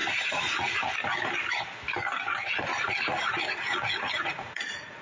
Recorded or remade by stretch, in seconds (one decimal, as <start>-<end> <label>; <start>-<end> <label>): 0.0-0.9 remade; 0.9-2.7 recorded; 2.7-5.0 remade